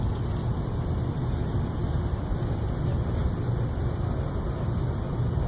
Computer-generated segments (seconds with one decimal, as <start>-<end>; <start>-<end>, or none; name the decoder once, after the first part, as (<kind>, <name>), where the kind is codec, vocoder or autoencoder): none